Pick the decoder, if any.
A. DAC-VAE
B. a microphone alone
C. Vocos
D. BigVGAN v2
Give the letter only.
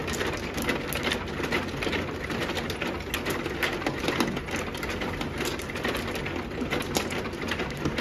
B